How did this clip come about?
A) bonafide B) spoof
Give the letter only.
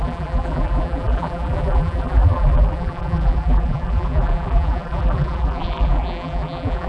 B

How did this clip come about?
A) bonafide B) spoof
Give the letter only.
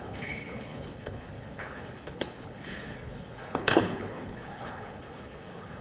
B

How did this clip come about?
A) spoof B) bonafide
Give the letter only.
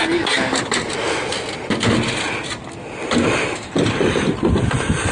B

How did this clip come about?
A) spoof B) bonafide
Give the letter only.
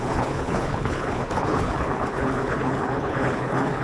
A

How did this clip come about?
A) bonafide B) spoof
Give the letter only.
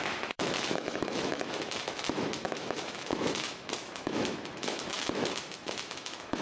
B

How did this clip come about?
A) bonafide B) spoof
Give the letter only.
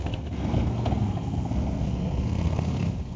B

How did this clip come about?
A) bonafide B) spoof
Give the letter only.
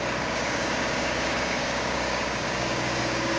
B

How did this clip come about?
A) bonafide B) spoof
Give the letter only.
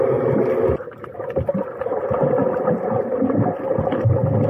A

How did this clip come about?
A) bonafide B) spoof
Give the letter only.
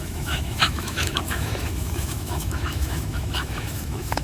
B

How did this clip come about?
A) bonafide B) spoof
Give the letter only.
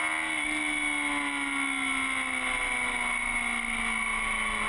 A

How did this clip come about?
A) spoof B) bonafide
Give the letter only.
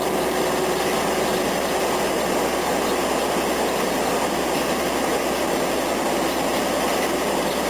B